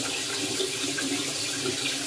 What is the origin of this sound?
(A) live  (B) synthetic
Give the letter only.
B